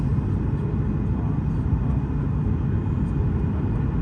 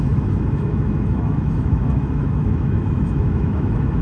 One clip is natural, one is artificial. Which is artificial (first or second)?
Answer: second